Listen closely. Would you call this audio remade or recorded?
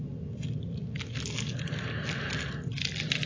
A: recorded